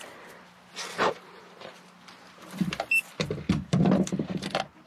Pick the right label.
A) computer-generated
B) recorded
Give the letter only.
A